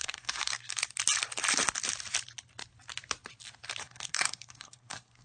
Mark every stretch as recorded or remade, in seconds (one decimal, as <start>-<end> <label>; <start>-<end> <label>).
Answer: 0.0-0.7 remade; 0.7-3.8 recorded; 3.8-5.2 remade